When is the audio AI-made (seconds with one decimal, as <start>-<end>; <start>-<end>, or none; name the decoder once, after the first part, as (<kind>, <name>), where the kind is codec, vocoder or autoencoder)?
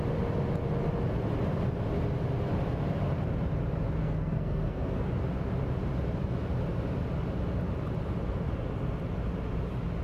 4.0-5.1 (codec, SNAC)